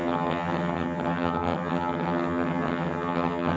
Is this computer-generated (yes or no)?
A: yes